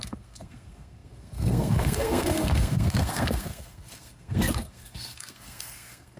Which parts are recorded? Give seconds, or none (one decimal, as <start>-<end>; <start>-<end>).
none